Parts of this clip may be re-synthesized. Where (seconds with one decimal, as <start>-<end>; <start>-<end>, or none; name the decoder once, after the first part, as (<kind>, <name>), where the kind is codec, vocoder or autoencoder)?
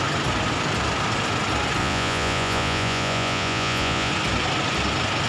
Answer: 1.8-4.1 (vocoder, Vocos)